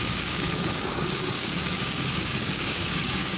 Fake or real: fake